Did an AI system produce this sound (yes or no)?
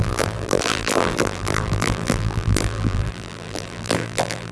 yes